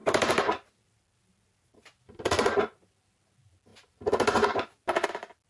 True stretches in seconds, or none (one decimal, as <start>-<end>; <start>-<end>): 0.0-5.5